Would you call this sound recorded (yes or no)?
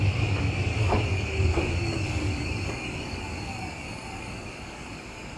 no